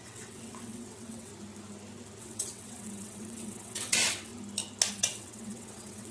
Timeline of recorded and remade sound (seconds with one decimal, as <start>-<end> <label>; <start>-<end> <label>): 0.0-1.3 remade; 1.3-2.2 recorded; 2.2-4.3 remade; 4.3-4.9 recorded; 4.9-6.1 remade